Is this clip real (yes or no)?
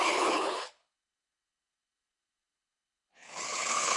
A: no